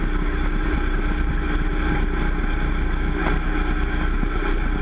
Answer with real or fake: real